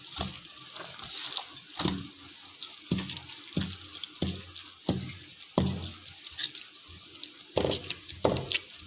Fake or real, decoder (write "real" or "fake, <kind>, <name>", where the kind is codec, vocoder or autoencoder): real